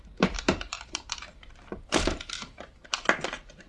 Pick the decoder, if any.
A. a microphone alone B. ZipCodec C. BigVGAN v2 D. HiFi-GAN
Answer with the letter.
C